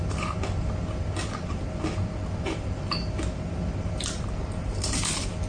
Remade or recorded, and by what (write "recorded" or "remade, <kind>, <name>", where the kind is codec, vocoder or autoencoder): recorded